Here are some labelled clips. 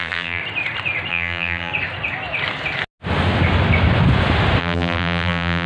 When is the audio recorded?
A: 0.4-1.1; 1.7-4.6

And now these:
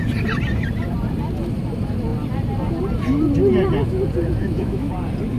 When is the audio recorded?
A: 0.0-4.4; 4.9-5.4

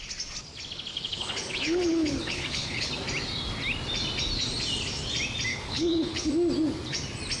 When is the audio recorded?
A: 0.0-0.9; 2.9-5.5; 6.3-7.4